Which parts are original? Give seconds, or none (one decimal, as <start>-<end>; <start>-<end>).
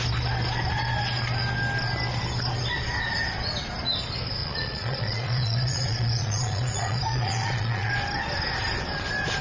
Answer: 0.0-4.4; 7.9-9.4